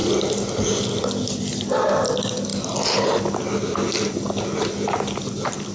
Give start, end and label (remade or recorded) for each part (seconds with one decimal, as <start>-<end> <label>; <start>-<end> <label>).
0.0-5.7 recorded

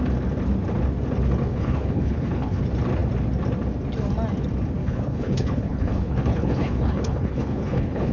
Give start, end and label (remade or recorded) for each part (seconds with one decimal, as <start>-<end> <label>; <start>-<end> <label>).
0.0-1.5 recorded; 1.5-2.6 remade; 2.6-4.8 recorded; 4.8-8.1 remade

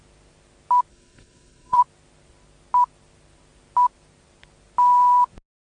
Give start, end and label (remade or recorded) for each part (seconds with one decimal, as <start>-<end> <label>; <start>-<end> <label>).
0.0-0.9 recorded; 0.9-1.8 remade; 1.8-5.7 recorded

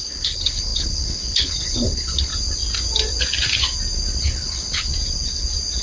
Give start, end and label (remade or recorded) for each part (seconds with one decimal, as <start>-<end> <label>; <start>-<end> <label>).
0.0-2.3 remade; 2.3-4.2 recorded; 4.2-4.9 remade; 4.9-5.8 recorded

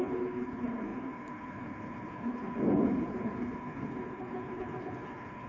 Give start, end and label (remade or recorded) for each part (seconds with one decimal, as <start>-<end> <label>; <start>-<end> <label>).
0.0-5.5 remade

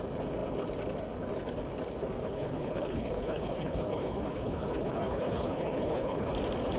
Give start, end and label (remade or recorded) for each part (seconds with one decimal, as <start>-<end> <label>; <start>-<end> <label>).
0.0-2.2 recorded; 2.2-6.3 remade; 6.3-6.8 recorded